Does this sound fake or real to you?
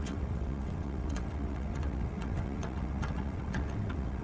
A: fake